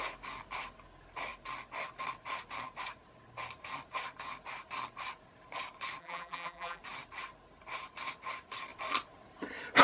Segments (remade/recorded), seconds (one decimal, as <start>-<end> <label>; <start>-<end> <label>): 0.0-6.0 recorded; 6.0-6.8 remade; 6.8-9.8 recorded